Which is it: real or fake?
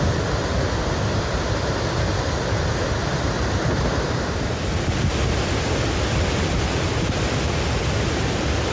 real